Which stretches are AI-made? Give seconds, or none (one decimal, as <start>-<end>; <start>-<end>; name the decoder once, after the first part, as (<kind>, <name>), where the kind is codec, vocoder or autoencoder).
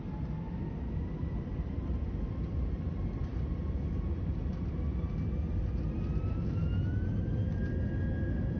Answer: none